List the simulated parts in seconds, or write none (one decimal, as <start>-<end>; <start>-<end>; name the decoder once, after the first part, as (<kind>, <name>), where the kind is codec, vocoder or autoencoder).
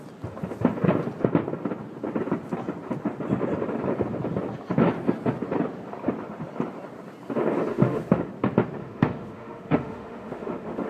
7.7-8.3 (autoencoder, DAC-VAE); 8.8-10.9